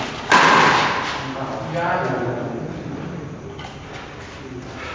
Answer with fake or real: real